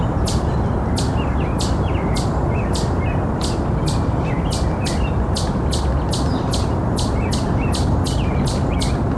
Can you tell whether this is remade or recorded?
recorded